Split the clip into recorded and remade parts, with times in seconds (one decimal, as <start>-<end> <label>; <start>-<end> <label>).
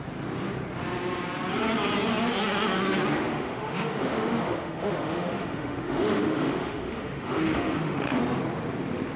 0.0-3.3 recorded; 3.3-8.2 remade; 8.2-9.2 recorded